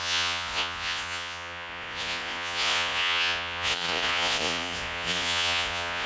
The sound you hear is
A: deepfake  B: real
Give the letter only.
A